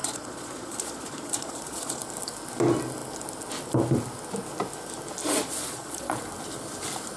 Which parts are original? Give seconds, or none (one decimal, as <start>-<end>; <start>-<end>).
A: 2.0-5.2; 6.2-7.2